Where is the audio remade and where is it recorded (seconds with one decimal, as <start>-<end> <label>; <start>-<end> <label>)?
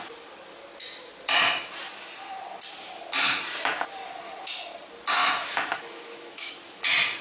0.0-5.2 recorded; 5.2-6.5 remade; 6.5-7.2 recorded